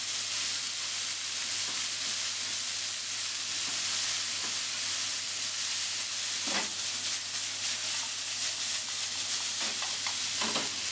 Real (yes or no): yes